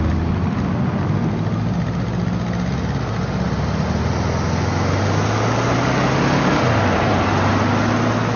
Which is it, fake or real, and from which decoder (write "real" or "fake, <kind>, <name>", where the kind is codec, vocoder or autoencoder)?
real